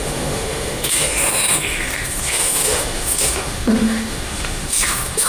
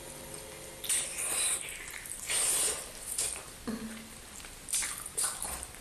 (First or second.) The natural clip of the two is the second